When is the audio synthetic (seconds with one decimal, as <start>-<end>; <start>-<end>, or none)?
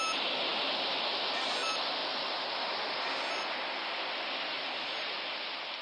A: none